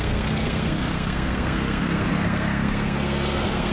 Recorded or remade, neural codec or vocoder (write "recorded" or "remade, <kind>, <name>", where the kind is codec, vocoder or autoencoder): remade, codec, SNAC